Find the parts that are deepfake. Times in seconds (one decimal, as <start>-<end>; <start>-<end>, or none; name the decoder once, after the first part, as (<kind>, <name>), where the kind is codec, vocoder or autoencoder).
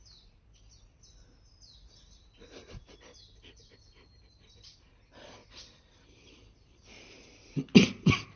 none